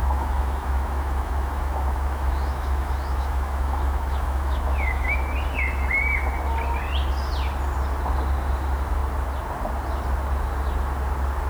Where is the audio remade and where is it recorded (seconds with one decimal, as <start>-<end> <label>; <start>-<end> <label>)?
0.0-5.2 remade; 5.2-11.5 recorded